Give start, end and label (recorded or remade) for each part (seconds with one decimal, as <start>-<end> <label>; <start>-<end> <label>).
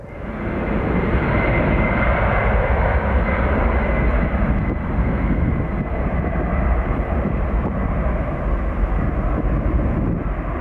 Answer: 0.0-5.0 recorded; 5.0-5.5 remade; 5.5-10.6 recorded